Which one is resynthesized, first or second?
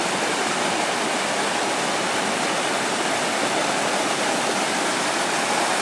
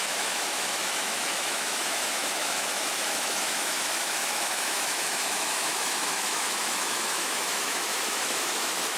second